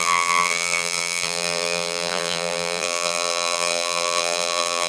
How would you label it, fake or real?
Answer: fake